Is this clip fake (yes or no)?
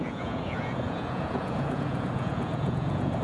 yes